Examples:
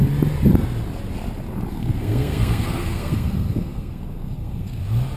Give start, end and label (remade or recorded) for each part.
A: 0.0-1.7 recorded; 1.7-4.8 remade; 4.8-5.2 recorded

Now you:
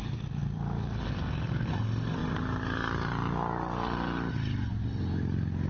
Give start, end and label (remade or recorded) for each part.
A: 0.0-2.2 remade; 2.2-5.7 recorded